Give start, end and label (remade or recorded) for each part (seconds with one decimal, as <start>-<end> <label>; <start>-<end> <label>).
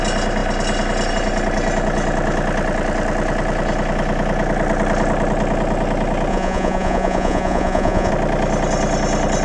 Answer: 0.0-6.3 recorded; 6.3-8.1 remade; 8.1-9.4 recorded